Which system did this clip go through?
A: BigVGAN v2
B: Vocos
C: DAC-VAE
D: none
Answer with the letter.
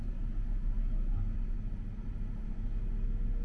D